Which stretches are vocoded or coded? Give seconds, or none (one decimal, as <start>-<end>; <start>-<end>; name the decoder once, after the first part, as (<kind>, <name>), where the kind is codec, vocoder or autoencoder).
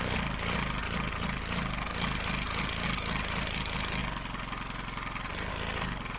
none